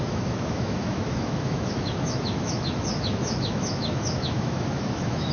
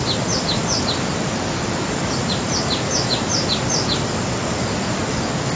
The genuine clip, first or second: second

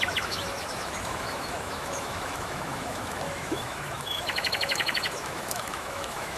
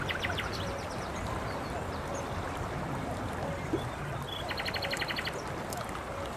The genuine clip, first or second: second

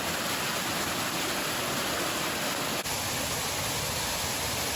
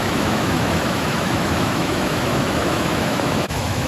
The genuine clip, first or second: first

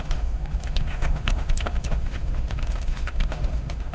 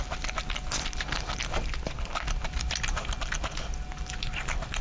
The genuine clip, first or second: second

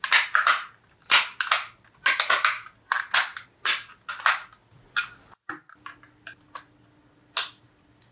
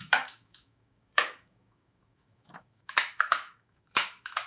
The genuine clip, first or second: first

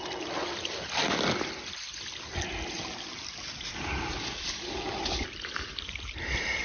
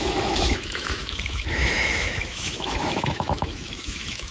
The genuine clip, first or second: first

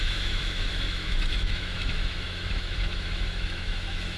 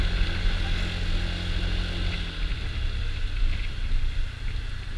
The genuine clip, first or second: second